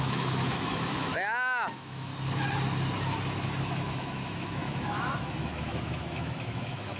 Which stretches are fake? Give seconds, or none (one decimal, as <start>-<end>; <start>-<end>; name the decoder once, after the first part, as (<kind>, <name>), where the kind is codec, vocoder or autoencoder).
0.0-1.1 (autoencoder, DAC-VAE); 1.7-2.1; 3.6-7.0

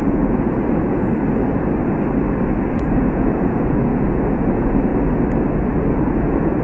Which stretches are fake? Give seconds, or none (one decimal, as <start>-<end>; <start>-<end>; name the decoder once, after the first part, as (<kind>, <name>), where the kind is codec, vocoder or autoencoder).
0.0-1.1 (vocoder, Vocos); 2.7-4.9; 5.9-6.6

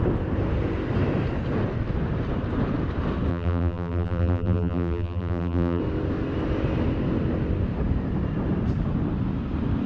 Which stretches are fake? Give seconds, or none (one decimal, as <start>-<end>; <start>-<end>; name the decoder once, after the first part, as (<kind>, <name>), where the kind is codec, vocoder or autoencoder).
3.3-5.8 (vocoder, BigVGAN v2)